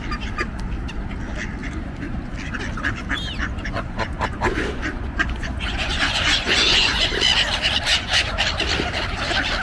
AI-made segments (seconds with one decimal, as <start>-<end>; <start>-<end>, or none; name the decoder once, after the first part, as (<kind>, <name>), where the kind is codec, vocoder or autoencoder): 1.6-2.3 (vocoder, Vocos); 3.4-7.1; 7.9-8.4